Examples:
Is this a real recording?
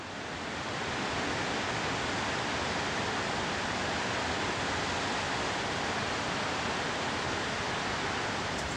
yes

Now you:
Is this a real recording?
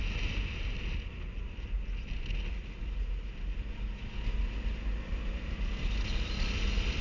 yes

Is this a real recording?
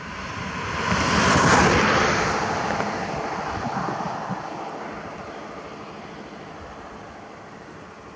yes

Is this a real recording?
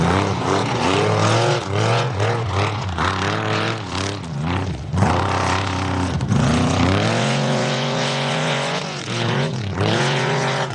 no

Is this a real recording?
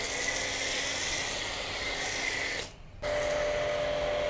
yes